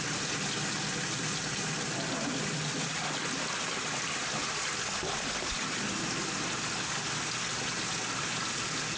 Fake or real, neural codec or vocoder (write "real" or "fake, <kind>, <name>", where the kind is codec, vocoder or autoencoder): real